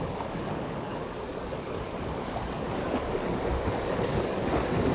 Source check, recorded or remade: remade